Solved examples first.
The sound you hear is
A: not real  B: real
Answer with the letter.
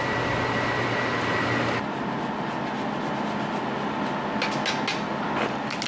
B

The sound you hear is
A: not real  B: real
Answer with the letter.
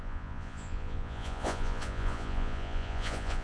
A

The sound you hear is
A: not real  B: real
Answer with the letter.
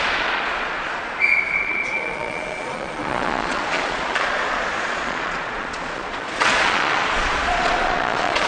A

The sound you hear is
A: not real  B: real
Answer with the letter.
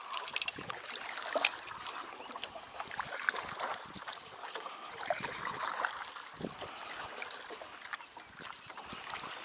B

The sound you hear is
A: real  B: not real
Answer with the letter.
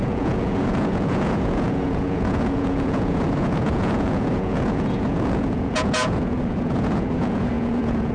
B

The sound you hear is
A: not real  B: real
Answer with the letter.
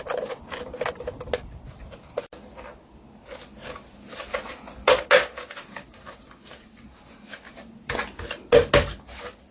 B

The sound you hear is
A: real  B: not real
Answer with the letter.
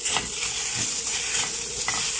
A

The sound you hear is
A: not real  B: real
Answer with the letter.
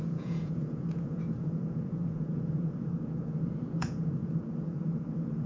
A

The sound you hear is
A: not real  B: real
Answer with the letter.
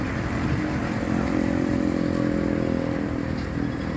B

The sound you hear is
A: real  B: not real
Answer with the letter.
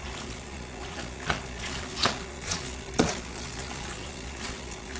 B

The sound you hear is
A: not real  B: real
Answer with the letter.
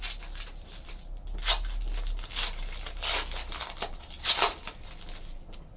B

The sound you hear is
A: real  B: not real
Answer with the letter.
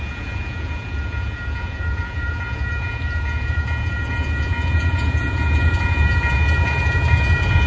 B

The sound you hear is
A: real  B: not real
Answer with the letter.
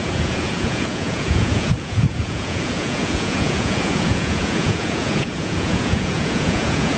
B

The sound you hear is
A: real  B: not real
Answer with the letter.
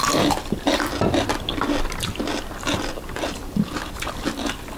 A